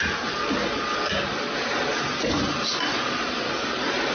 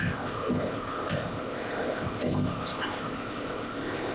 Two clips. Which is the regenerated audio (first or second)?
second